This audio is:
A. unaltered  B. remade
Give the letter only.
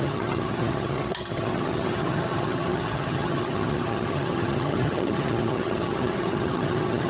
B